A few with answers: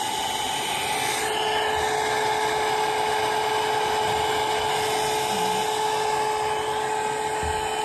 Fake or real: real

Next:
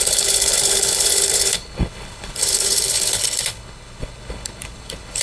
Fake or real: fake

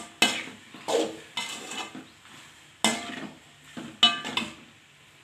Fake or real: real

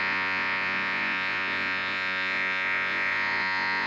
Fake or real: fake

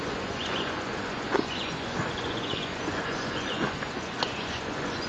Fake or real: fake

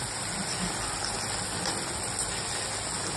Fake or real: real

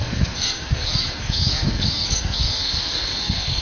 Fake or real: fake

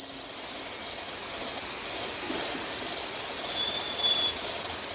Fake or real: real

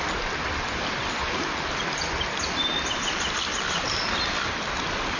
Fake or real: real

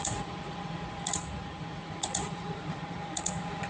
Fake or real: fake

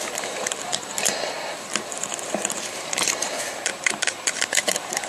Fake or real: fake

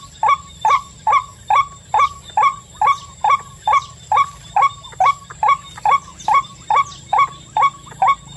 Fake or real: real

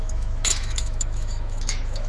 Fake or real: fake